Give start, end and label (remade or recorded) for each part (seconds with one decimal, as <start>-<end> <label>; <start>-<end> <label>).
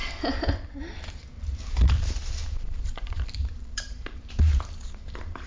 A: 0.0-1.9 recorded; 1.9-5.5 remade